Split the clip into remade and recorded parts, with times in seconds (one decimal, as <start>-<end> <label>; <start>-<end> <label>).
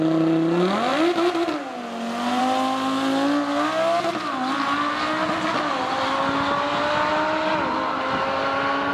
0.0-8.9 recorded